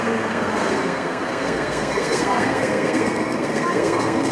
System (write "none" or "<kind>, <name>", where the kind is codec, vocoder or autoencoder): codec, SNAC